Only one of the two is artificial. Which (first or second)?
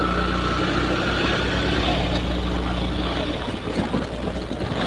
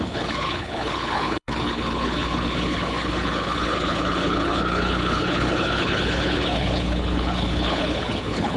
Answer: second